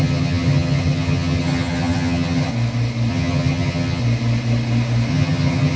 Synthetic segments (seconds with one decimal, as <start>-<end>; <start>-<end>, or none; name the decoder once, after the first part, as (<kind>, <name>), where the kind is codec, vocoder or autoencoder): 0.0-2.5 (vocoder, HiFi-GAN); 3.1-4.0; 5.1-5.8